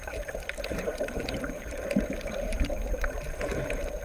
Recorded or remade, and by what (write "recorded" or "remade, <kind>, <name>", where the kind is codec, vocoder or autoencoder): remade, vocoder, BigVGAN v2